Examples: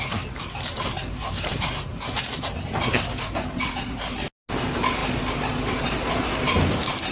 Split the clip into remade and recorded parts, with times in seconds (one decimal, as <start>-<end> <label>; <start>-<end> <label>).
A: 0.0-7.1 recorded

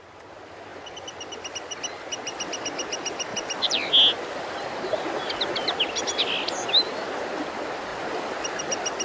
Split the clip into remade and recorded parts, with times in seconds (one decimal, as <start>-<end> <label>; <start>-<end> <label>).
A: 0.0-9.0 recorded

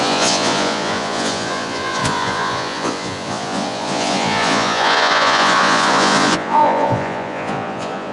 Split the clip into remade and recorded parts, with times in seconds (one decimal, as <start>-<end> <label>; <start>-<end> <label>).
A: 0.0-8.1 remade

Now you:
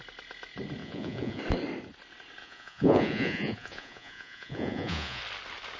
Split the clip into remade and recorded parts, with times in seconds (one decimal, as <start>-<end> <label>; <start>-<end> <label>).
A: 0.0-0.8 recorded; 0.8-1.4 remade; 1.4-2.4 recorded; 2.4-5.2 remade; 5.2-5.8 recorded